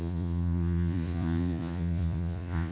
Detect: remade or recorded remade